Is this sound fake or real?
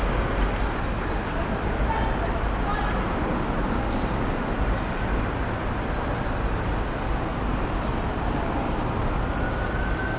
real